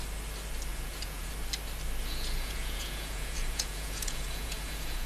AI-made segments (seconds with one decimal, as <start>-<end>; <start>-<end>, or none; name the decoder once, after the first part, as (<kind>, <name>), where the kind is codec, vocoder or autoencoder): 0.7-1.3 (vocoder, Vocos); 2.0-5.1